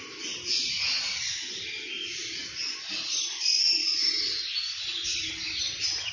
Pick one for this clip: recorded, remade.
recorded